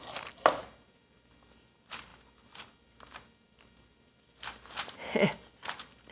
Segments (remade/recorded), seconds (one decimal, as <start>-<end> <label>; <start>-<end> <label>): 0.0-6.1 recorded